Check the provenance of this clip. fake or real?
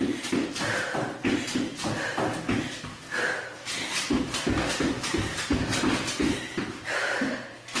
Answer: real